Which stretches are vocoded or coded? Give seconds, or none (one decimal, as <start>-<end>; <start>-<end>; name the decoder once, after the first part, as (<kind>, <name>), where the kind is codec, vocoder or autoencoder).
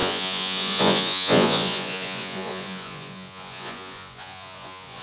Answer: 0.0-5.0 (vocoder, Vocos)